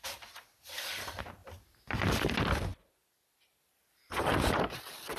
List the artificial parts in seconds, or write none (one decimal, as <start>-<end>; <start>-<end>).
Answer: none